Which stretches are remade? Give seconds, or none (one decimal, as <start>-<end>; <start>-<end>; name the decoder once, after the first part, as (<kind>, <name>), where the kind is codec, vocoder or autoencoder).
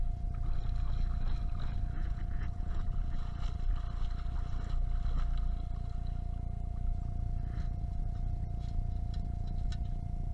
2.0-3.4 (vocoder, Vocos)